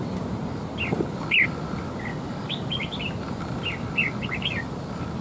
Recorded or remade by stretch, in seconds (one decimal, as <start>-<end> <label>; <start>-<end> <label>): 0.0-2.1 recorded; 2.1-2.8 remade; 2.8-5.2 recorded